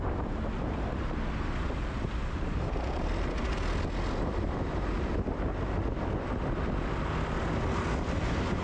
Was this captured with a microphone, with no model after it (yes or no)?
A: yes